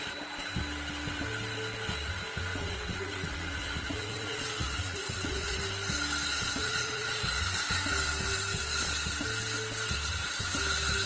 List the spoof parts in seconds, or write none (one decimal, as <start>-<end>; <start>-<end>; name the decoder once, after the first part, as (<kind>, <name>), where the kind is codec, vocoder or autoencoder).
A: 2.5-5.6 (vocoder, Vocos); 6.3-7.4